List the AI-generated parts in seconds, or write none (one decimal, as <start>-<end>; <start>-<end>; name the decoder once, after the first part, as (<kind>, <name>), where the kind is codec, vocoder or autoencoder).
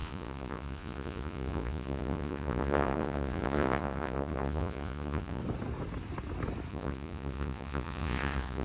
0.0-5.4 (vocoder, Vocos); 6.7-8.6